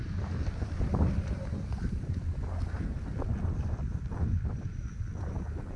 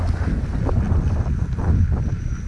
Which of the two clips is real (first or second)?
second